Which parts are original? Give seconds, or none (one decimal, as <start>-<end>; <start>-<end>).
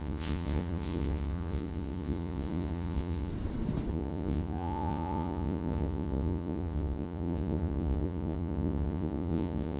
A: 3.3-3.9